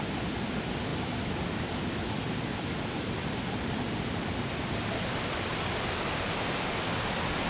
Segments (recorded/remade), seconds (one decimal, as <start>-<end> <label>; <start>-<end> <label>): 0.0-7.5 recorded